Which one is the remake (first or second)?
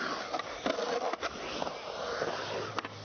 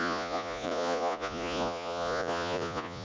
second